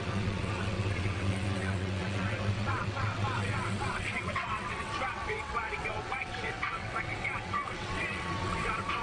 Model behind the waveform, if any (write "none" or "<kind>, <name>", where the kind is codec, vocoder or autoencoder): vocoder, WaveNeXt